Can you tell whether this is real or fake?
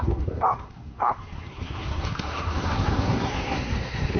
fake